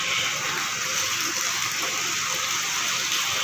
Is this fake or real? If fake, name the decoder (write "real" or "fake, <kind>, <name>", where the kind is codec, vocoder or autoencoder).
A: real